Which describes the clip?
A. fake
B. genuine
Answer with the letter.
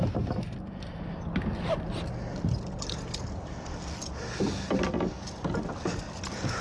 B